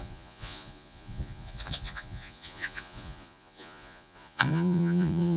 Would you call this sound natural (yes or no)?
no